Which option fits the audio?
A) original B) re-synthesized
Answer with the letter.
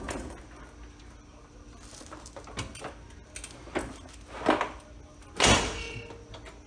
A